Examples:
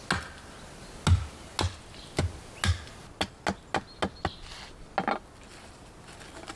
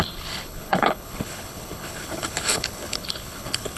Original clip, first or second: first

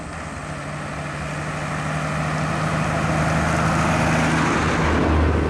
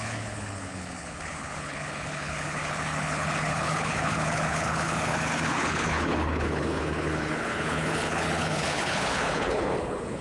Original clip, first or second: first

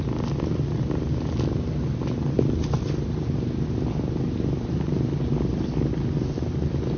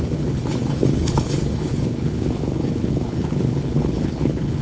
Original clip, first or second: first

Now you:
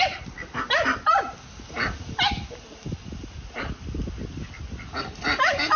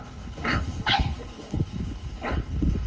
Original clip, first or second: first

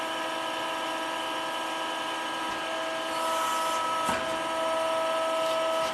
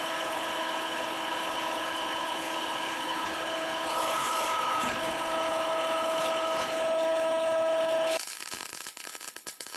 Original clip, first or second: first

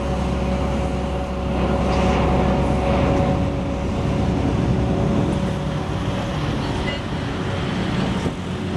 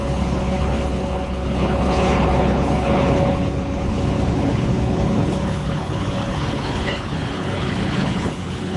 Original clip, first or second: first